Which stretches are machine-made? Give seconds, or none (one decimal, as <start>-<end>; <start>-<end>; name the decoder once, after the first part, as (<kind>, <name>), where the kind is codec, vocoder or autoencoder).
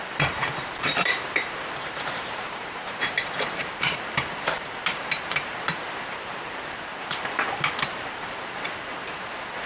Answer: 0.0-9.7 (vocoder, BigVGAN v2)